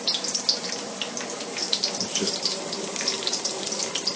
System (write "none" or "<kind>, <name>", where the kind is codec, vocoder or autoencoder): none